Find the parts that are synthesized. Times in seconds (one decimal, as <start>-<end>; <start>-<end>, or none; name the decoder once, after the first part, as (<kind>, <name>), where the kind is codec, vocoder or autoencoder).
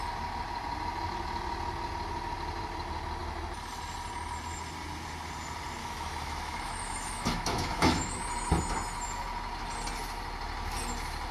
5.8-8.2 (autoencoder, DAC-VAE)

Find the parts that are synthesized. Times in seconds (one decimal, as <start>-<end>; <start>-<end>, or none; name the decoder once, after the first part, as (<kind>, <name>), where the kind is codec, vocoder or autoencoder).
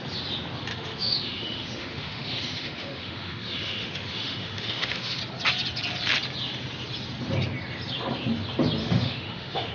0.7-5.2 (autoencoder, DAC-VAE); 8.8-9.7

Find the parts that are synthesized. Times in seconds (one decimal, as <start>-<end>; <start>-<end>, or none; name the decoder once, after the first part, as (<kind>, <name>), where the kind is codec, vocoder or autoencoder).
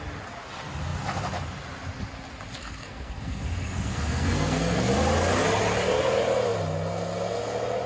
2.6-4.9 (codec, SNAC)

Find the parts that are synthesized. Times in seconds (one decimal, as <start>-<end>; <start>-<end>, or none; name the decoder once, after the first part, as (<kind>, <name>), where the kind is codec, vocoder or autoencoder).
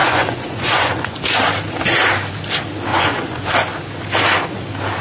0.0-1.2 (vocoder, Vocos); 2.9-3.4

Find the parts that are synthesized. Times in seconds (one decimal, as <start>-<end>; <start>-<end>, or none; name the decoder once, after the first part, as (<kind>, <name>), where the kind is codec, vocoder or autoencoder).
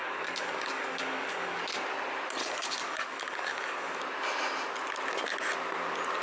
0.0-1.6 (codec, DAC); 2.4-4.0